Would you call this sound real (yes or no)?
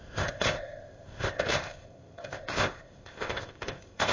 no